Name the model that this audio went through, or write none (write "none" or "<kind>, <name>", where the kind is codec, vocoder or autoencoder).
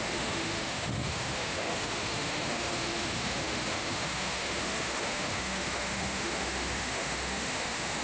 autoencoder, DAC-VAE